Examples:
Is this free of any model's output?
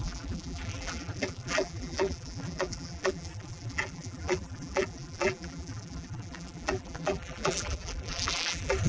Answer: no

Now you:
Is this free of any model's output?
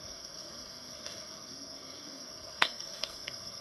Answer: no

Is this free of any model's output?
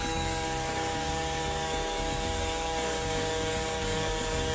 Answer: no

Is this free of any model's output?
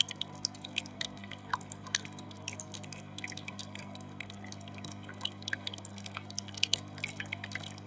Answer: no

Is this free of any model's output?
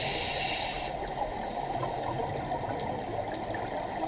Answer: yes